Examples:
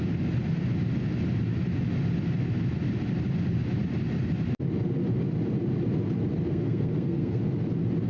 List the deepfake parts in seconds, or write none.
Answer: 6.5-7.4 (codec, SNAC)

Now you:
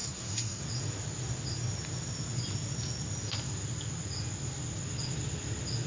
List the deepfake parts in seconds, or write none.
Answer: 0.0-0.6 (codec, SNAC)

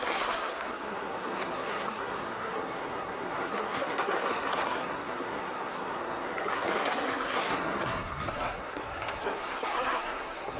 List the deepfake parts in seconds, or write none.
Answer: 0.0-10.6 (codec, SNAC)

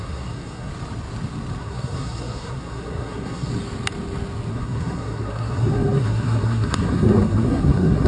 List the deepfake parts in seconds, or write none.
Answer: 0.0-0.7 (codec, SNAC); 1.6-3.5; 4.5-8.1